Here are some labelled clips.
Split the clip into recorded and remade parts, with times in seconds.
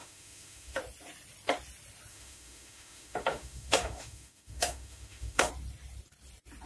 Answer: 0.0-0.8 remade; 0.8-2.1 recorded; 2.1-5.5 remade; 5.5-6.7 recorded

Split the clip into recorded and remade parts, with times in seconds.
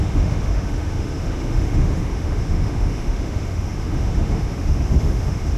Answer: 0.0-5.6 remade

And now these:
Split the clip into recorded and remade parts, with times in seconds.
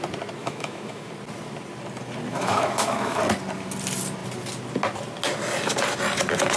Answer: 0.0-0.4 recorded; 0.4-1.1 remade; 1.1-2.3 recorded; 2.3-3.2 remade; 3.2-6.6 recorded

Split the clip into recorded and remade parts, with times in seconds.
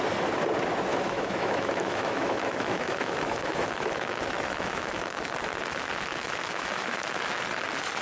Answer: 0.0-0.9 recorded; 0.9-5.3 remade; 5.3-6.1 recorded; 6.1-7.4 remade; 7.4-8.0 recorded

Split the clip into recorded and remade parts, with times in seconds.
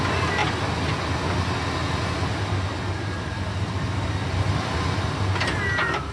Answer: 0.0-6.1 recorded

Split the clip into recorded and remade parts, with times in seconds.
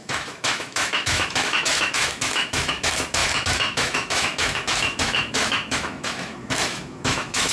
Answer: 0.0-7.5 remade